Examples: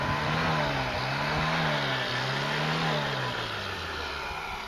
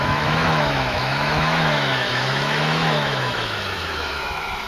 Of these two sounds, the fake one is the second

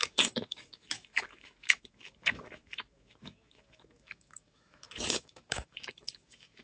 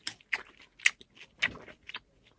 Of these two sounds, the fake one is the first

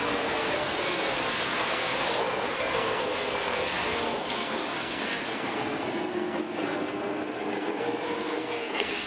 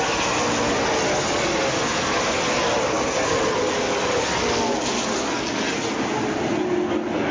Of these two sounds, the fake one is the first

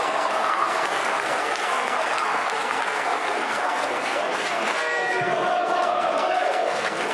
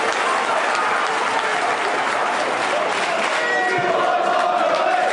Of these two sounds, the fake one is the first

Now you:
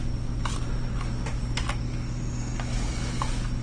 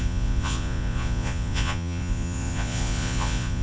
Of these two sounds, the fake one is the second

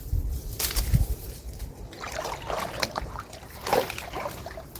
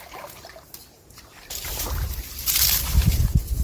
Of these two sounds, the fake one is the second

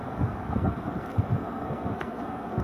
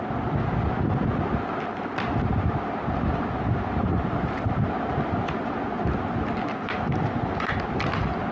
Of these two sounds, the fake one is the first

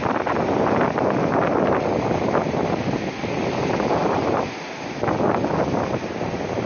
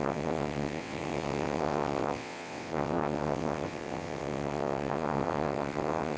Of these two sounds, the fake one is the second